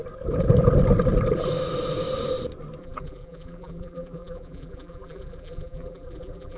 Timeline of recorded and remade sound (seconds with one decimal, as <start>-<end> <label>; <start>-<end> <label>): 0.0-2.8 recorded; 2.8-6.6 remade